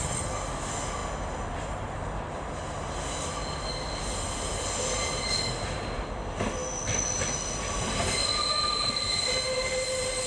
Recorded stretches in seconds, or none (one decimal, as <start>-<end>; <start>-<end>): 0.0-10.3